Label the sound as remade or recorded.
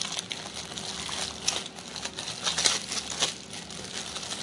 recorded